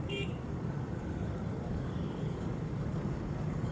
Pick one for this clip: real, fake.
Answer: fake